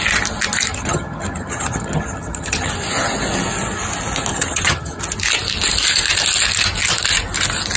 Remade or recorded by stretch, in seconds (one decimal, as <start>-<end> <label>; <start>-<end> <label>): 0.0-0.7 recorded; 0.7-2.7 remade; 2.7-4.3 recorded; 4.3-5.0 remade; 5.0-7.8 recorded